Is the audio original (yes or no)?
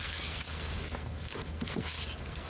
no